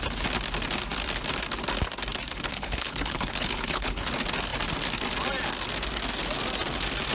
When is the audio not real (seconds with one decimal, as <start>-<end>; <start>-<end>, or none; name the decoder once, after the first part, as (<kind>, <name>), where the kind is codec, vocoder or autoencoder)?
2.5-4.1 (codec, HILCodec)